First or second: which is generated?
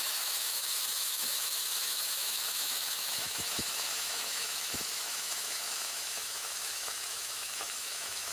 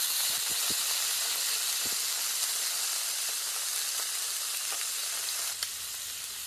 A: first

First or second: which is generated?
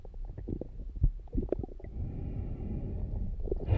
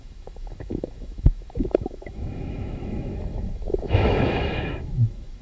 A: second